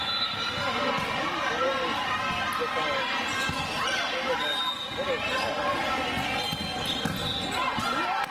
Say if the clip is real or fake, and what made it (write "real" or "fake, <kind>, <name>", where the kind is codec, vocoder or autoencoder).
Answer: real